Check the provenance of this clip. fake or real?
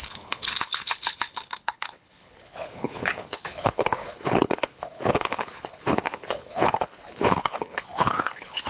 fake